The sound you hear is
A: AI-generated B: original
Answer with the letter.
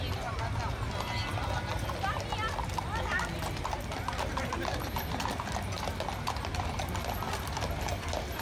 B